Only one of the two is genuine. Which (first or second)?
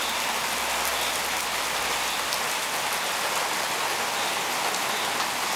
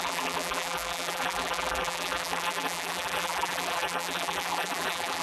first